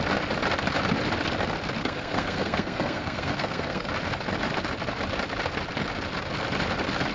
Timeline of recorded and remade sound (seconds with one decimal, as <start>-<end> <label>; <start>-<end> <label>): 0.0-1.8 recorded; 1.8-3.9 remade; 3.9-7.1 recorded